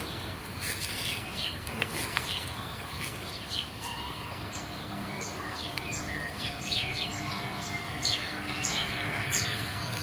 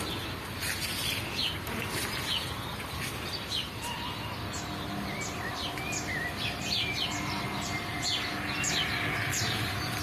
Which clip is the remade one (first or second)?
first